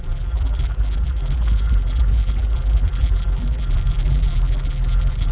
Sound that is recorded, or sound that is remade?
remade